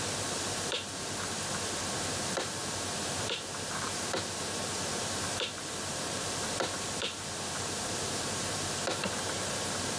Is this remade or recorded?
remade